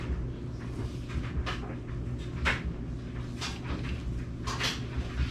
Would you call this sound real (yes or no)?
yes